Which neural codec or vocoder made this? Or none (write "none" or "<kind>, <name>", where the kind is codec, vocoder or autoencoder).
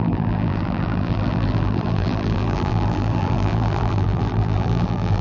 vocoder, BigVGAN v2